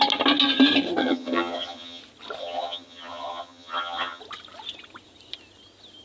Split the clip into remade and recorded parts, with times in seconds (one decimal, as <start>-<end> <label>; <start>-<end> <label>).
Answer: 0.0-1.0 recorded; 1.0-2.0 remade; 2.0-2.4 recorded; 2.4-4.2 remade; 4.2-6.0 recorded